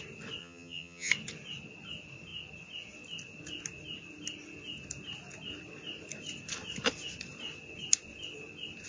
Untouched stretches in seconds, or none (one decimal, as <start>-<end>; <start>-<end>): 0.0-0.4; 1.1-8.9